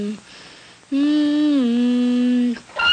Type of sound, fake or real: real